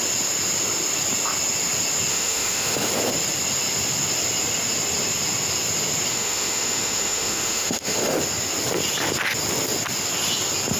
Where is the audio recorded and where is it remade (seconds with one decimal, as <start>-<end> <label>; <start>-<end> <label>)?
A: 0.0-2.1 recorded; 2.1-2.9 remade; 2.9-6.1 recorded; 6.1-8.1 remade; 8.1-10.8 recorded